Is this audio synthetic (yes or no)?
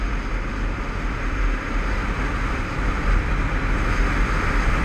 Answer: no